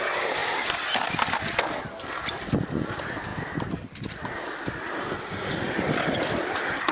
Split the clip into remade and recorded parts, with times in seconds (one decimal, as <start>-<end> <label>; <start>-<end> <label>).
0.0-3.3 recorded; 3.3-6.9 remade